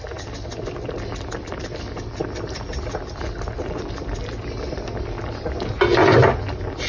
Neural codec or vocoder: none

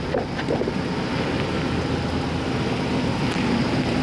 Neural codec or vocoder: none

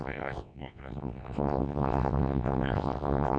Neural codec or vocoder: vocoder, WaveNeXt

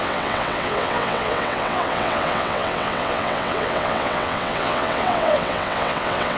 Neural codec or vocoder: vocoder, WaveNeXt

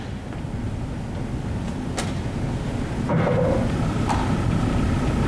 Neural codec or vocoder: none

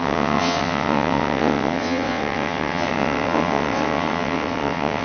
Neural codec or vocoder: vocoder, WaveNeXt